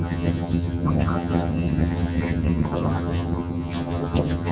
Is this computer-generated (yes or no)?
yes